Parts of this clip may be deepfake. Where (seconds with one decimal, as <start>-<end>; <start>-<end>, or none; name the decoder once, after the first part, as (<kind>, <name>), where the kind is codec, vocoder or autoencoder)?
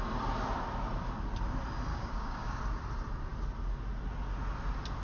1.9-2.6 (codec, DAC)